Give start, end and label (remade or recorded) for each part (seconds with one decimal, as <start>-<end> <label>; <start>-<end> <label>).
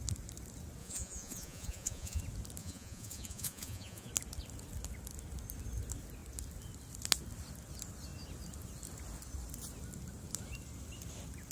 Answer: 0.0-0.8 recorded; 0.8-2.2 remade; 2.2-2.6 recorded; 2.6-4.1 remade; 4.1-11.5 recorded